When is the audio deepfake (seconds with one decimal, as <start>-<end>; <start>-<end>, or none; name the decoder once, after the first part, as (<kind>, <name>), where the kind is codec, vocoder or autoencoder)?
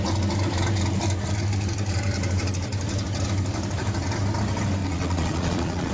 4.8-5.9 (vocoder, Vocos)